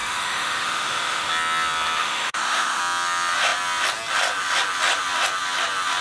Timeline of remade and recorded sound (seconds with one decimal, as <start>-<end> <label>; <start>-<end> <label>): 0.0-1.3 remade; 1.3-2.0 recorded; 2.0-2.8 remade; 2.8-6.0 recorded